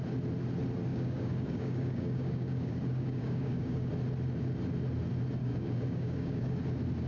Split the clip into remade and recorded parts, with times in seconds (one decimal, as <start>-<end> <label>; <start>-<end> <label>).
0.0-0.9 recorded; 0.9-3.9 remade; 3.9-5.4 recorded; 5.4-6.6 remade; 6.6-7.1 recorded